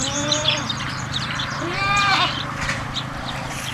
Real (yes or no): no